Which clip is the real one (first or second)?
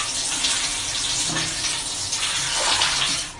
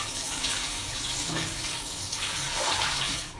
first